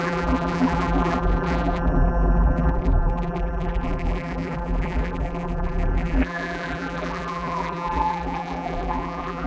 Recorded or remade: remade